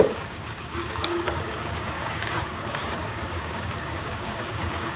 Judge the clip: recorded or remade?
remade